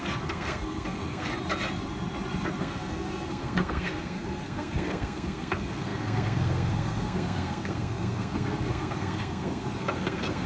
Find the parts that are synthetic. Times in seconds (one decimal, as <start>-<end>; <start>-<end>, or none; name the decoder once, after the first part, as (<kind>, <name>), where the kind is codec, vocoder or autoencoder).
0.0-1.3 (codec, SNAC); 2.6-10.5